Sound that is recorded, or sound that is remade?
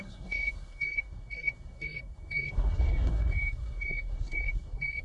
remade